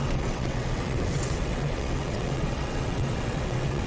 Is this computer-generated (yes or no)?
yes